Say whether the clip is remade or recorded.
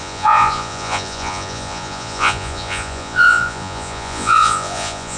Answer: remade